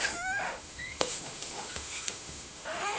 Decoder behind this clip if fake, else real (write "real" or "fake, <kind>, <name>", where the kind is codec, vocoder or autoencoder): fake, autoencoder, DAC-VAE